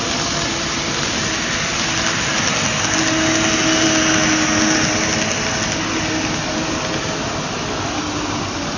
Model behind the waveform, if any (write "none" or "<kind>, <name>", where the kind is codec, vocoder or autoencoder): none